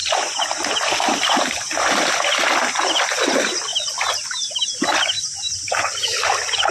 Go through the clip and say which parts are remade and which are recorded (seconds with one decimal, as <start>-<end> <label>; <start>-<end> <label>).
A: 0.0-6.7 recorded

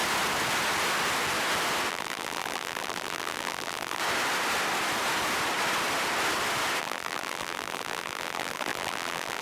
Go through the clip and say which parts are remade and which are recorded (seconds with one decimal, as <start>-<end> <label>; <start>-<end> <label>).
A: 0.0-1.9 recorded; 1.9-4.0 remade; 4.0-6.8 recorded; 6.8-9.4 remade

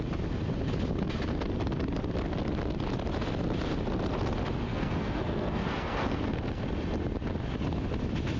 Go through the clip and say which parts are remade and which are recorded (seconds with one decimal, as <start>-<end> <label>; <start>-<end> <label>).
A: 0.0-4.7 recorded; 4.7-6.6 remade; 6.6-8.4 recorded

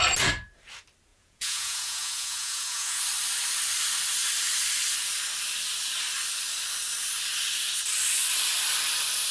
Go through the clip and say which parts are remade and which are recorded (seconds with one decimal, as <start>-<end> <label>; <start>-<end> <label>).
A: 0.0-1.1 recorded; 1.1-3.0 remade; 3.0-9.3 recorded